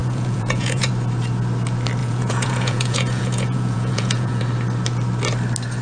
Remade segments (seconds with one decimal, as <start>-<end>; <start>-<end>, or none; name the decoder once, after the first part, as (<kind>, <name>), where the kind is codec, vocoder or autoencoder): 0.0-0.9 (vocoder, Vocos); 2.0-4.4